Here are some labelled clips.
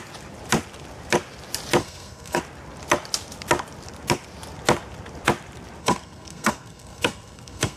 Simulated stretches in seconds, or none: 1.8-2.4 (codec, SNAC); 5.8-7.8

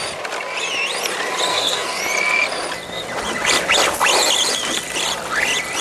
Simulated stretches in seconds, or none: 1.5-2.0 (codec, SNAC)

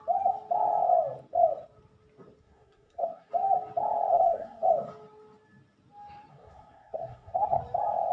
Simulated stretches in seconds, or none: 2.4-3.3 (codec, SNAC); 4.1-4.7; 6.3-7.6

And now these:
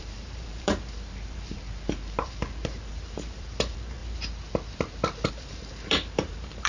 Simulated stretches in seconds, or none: 0.0-4.0 (vocoder, BigVGAN v2); 5.3-6.7